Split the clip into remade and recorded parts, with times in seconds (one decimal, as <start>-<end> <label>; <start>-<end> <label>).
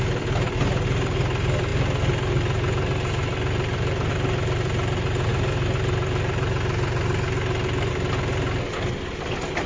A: 0.0-9.7 recorded